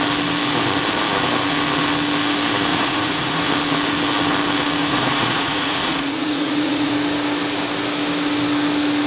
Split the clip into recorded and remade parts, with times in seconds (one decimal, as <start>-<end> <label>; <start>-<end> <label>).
0.0-2.7 recorded; 2.7-3.5 remade; 3.5-4.8 recorded; 4.8-6.9 remade; 6.9-9.1 recorded